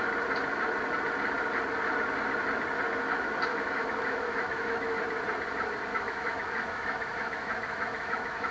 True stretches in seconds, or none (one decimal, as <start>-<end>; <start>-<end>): 0.0-3.5; 5.0-5.9